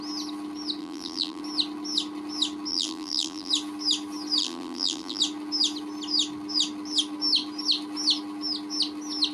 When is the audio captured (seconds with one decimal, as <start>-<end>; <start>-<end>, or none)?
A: 0.0-0.8; 1.4-2.7; 3.5-4.4; 5.2-9.3